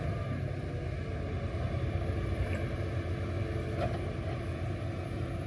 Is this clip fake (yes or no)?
no